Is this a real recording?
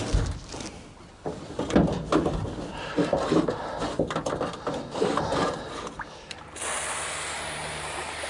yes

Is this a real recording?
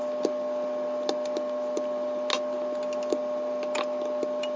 yes